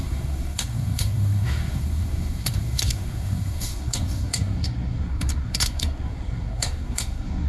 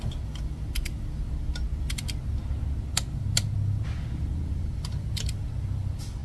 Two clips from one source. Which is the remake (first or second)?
first